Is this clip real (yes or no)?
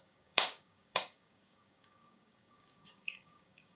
no